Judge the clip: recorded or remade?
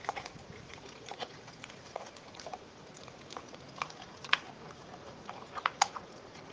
remade